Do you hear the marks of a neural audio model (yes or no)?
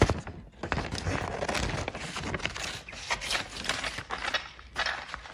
no